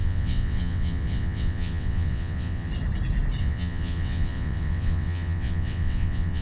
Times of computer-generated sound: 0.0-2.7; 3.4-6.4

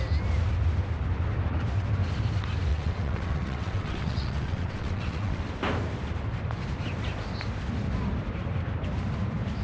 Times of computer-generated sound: 2.7-5.4

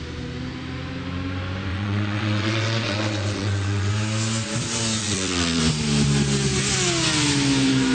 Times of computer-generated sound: 1.7-3.9; 5.0-5.6

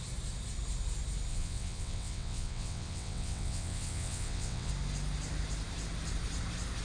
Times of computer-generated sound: 1.3-4.7

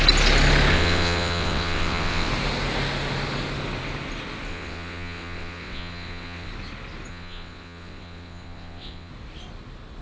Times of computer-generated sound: 0.7-2.3; 4.5-6.5; 7.1-9.1

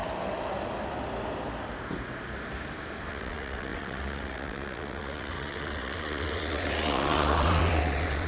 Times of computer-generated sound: 3.1-8.3